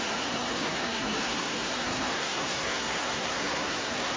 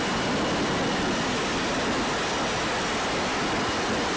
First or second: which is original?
second